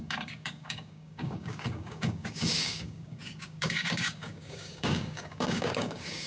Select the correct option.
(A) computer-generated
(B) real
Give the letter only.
A